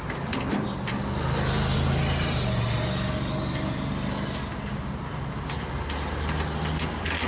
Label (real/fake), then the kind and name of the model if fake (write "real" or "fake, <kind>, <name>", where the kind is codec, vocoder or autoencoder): real